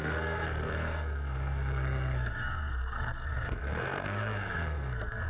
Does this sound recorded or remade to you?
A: remade